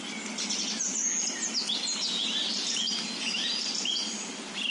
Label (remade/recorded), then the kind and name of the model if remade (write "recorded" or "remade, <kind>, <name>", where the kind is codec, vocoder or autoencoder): recorded